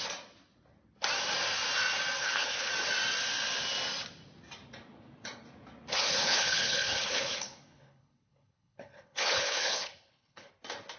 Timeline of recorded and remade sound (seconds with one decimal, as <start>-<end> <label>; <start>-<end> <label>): 0.0-2.2 recorded; 2.2-2.7 remade; 2.7-5.9 recorded; 5.9-10.5 remade; 10.5-11.0 recorded